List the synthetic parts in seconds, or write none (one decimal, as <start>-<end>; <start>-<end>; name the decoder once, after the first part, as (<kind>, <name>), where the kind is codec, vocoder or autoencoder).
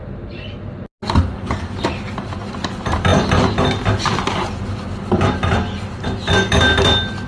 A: none